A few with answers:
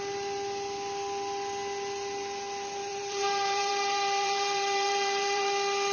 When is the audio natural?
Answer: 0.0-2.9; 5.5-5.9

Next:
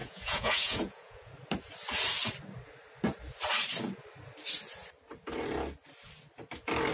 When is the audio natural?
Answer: 1.3-6.9

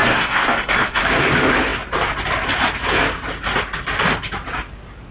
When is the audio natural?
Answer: 1.0-5.1

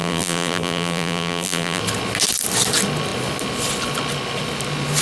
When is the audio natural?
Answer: 1.8-5.0

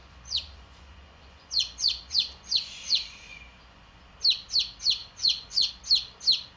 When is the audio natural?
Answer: 4.0-5.0; 5.7-6.6

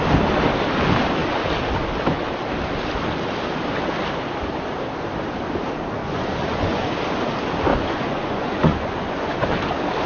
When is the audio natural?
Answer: 0.0-6.0; 6.9-7.7; 9.5-10.1